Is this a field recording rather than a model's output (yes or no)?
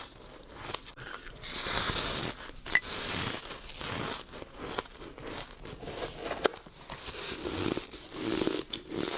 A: yes